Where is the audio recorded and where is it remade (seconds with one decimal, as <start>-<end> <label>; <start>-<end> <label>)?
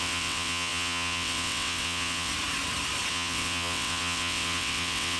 0.0-2.3 remade; 2.3-3.1 recorded; 3.1-5.2 remade